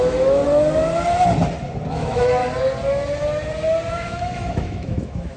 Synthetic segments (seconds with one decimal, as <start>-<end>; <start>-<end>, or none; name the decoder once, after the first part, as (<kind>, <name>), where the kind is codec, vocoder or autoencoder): 0.0-0.4 (autoencoder, DAC-VAE); 1.9-2.4; 3.9-5.4